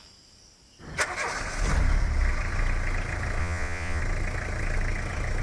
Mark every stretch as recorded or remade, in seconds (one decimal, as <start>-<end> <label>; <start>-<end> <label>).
0.0-3.4 recorded; 3.4-4.0 remade; 4.0-5.4 recorded